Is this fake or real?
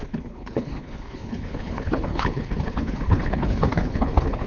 fake